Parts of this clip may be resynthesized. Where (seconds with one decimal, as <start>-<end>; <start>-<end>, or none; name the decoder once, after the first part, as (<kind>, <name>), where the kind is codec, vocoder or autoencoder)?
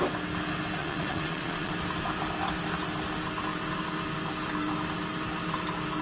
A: 0.8-1.7 (vocoder, Vocos)